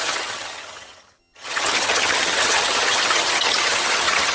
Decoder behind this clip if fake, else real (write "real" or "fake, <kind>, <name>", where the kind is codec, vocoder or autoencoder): fake, vocoder, HiFi-GAN